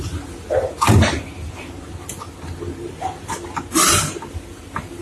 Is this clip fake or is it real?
real